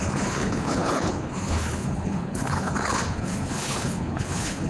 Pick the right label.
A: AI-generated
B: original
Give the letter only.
A